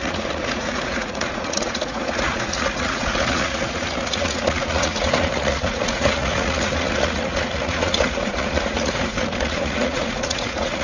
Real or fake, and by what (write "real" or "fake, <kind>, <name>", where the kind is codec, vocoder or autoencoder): fake, vocoder, Vocos